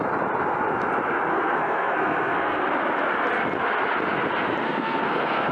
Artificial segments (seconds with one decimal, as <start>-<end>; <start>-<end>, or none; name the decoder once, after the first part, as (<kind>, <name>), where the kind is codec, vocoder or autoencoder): 1.3-2.6 (codec, SNAC); 4.6-5.5